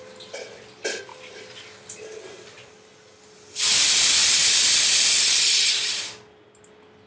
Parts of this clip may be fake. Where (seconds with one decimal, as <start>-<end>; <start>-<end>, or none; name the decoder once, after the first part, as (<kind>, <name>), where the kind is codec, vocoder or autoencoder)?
1.1-5.4 (vocoder, BigVGAN v2)